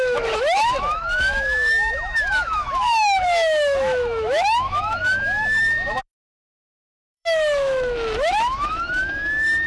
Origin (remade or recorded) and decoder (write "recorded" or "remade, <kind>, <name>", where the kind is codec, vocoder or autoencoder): remade, autoencoder, DAC-VAE